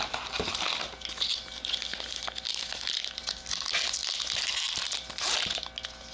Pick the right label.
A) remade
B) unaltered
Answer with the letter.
B